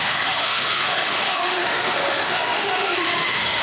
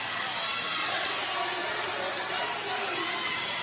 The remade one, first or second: first